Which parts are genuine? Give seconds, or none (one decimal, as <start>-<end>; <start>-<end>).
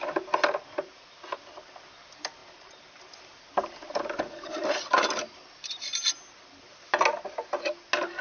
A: 0.0-8.2